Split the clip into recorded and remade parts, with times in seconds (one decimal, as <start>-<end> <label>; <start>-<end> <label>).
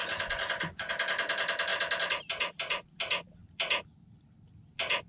0.0-0.9 remade; 0.9-5.1 recorded